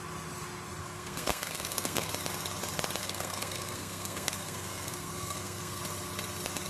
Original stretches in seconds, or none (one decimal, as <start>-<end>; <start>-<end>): 0.0-0.8; 2.1-3.0; 5.8-6.7